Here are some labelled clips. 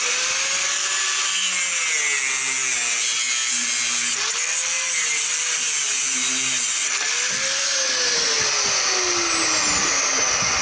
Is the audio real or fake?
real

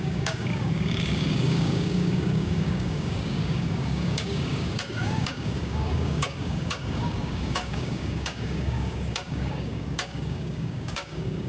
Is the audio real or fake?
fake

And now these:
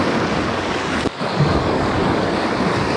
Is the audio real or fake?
fake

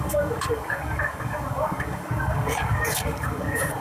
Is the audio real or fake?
fake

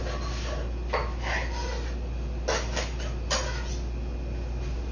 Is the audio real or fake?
real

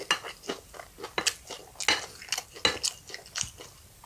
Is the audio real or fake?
real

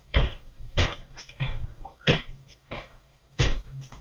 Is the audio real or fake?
fake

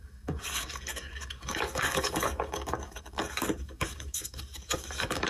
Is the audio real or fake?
fake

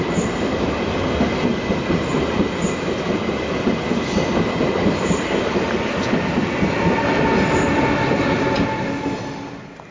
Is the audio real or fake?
real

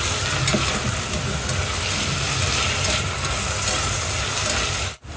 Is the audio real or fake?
real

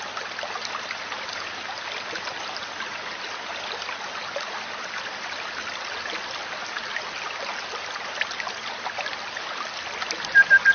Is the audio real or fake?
real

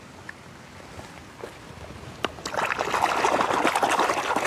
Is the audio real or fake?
real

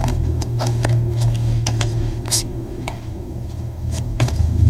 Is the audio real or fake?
fake